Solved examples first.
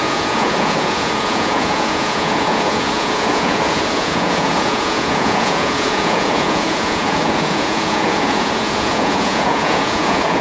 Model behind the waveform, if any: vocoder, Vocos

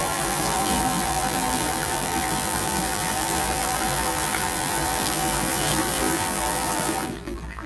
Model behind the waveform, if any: vocoder, BigVGAN v2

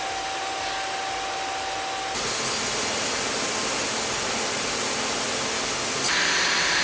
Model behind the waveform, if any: none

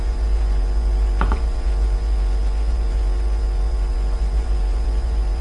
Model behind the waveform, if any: vocoder, Vocos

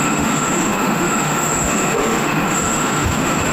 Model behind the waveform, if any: autoencoder, DAC-VAE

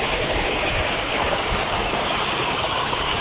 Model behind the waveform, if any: codec, DAC